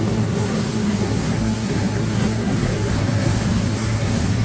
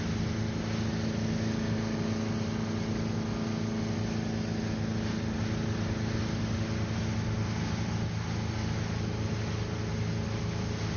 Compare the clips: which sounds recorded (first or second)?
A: second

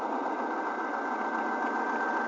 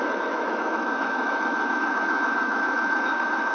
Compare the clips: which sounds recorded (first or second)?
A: first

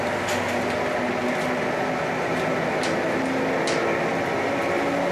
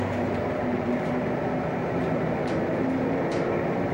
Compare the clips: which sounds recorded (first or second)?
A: first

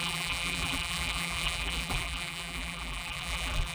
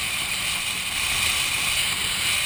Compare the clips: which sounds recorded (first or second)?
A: second